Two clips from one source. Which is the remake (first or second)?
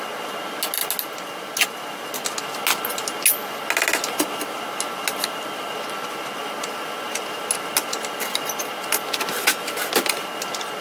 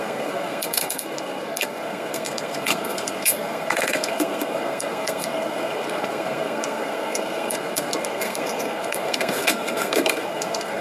second